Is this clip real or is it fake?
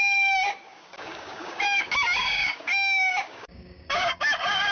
fake